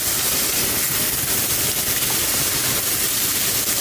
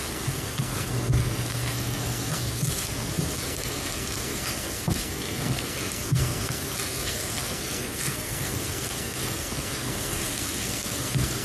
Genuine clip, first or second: first